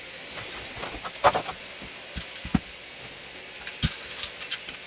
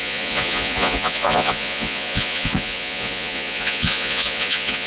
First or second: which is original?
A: first